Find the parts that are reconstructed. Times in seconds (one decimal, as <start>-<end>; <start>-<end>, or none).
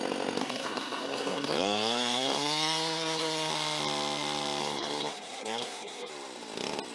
0.4-3.5; 4.6-6.1